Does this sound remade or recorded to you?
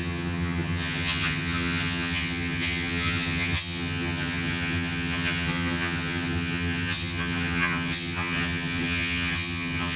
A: remade